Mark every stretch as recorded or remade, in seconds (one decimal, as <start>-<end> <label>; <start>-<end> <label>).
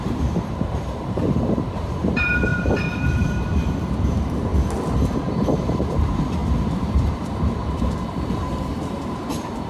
0.0-4.5 remade; 4.5-5.5 recorded; 5.5-9.7 remade